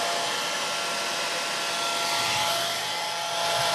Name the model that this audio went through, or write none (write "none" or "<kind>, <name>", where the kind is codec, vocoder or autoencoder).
none